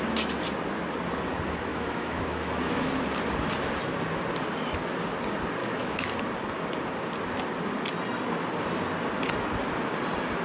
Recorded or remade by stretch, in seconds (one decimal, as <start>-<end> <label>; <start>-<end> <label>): 0.0-1.7 recorded; 1.7-2.9 remade; 2.9-5.6 recorded; 5.6-6.1 remade; 6.1-10.4 recorded